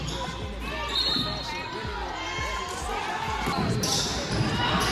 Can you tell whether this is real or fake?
real